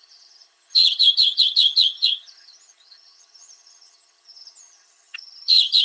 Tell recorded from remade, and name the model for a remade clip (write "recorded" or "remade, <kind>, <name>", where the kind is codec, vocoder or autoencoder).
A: remade, vocoder, HiFi-GAN